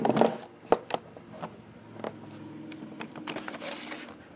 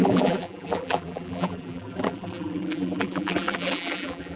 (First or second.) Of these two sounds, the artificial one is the second